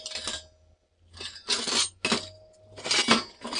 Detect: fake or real real